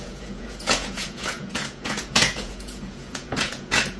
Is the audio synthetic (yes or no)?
yes